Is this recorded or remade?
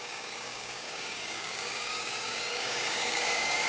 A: remade